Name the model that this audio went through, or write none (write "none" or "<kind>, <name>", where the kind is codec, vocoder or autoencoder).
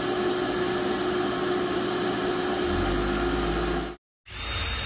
none